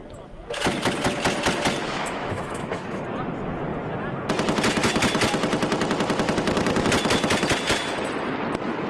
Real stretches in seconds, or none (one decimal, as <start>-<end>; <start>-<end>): 0.0-1.8; 3.0-8.9